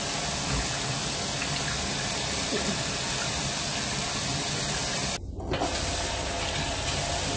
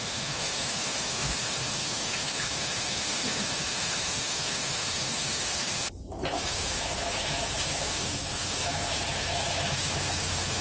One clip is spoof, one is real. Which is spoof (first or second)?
second